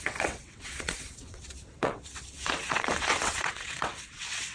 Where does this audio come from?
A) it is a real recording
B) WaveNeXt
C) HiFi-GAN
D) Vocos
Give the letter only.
B